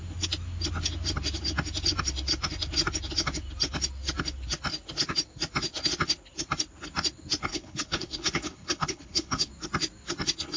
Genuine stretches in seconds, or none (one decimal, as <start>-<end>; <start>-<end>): 0.0-7.5; 9.5-10.6